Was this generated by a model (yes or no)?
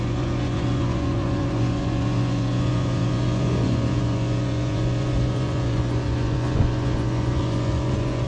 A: yes